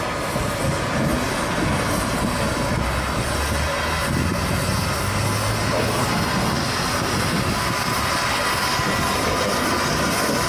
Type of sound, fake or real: real